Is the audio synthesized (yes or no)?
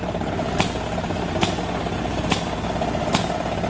no